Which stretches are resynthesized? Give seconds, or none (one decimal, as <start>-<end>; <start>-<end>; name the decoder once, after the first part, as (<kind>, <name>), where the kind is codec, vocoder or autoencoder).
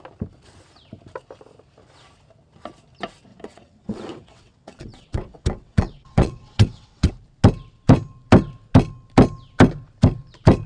3.3-7.1 (vocoder, WaveNeXt)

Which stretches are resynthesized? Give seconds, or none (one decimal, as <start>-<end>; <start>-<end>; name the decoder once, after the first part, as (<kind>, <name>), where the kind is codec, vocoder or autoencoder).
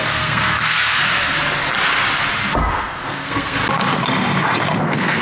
0.0-1.0 (codec, SNAC); 2.7-3.6; 4.8-5.2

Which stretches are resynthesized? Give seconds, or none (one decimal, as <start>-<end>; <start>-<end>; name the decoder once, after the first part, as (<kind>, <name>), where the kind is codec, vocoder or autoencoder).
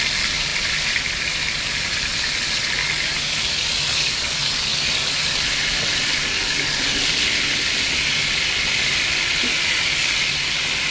2.8-5.4 (codec, DAC); 6.3-7.0; 9.5-10.3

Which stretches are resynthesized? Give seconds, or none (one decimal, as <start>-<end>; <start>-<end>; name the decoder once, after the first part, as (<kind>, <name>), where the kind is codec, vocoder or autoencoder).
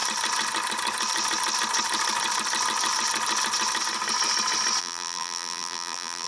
4.8-6.3 (vocoder, BigVGAN v2)